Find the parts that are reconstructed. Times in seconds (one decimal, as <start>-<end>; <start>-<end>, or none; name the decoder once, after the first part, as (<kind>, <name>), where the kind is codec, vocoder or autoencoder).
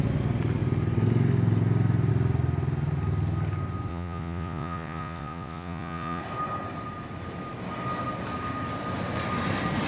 3.9-6.2 (vocoder, Vocos)